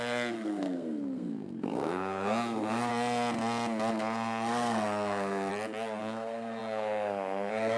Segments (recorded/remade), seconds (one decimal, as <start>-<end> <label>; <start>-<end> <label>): 0.0-2.9 remade; 2.9-3.9 recorded; 3.9-5.5 remade; 5.5-6.0 recorded; 6.0-7.8 remade